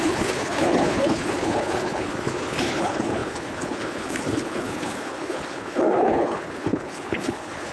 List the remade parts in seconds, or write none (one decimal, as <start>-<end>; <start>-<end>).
0.0-7.7